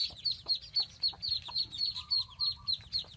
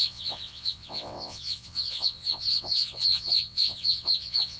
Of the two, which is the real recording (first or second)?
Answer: first